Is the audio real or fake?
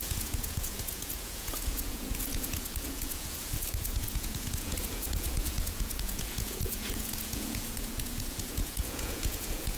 fake